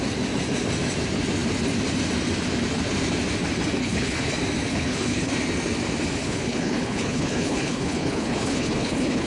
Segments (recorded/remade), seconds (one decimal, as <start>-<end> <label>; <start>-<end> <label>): 0.0-3.8 recorded; 3.8-4.3 remade; 4.3-4.7 recorded; 4.7-5.3 remade; 5.3-6.2 recorded; 6.2-9.3 remade